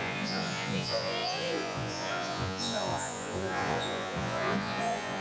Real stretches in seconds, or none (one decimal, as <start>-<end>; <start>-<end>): none